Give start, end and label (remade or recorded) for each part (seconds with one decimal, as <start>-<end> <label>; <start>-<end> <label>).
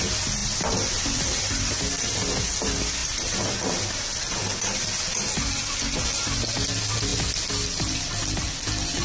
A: 0.0-0.4 recorded; 0.4-1.9 remade; 1.9-9.0 recorded